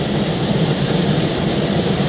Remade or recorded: recorded